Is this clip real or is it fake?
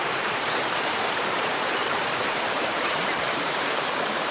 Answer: fake